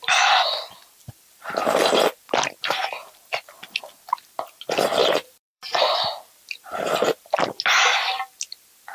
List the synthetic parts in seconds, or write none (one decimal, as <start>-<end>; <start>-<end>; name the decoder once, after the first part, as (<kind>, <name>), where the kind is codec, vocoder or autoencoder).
3.0-3.8 (vocoder, BigVGAN v2); 5.0-7.4